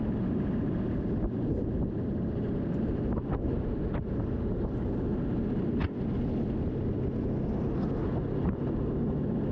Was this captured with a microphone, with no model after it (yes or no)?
yes